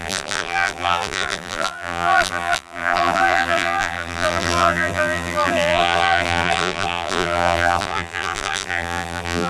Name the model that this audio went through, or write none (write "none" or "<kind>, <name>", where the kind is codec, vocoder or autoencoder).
vocoder, BigVGAN v2